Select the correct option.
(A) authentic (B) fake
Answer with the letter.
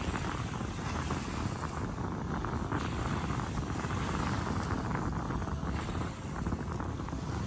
A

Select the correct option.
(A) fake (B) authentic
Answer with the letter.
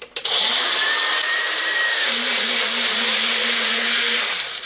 A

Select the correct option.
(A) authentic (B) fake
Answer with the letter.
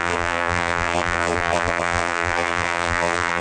B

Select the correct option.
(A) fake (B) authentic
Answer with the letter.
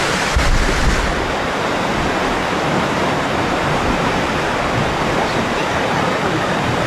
A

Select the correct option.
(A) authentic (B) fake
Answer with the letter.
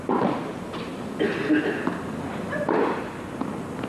A